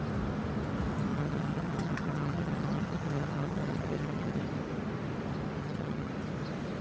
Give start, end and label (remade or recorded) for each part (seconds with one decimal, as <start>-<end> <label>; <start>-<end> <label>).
0.0-1.1 recorded; 1.1-4.4 remade; 4.4-5.6 recorded; 5.6-6.1 remade; 6.1-6.8 recorded